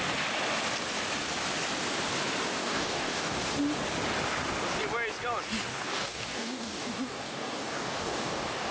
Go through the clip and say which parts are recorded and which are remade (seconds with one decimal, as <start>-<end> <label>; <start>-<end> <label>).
0.0-2.6 recorded; 2.6-3.4 remade; 3.4-5.7 recorded; 5.7-8.7 remade